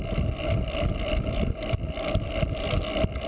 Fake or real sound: real